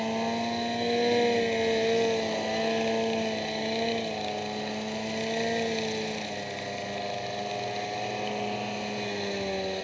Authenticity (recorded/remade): recorded